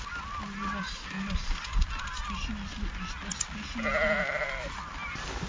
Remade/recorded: recorded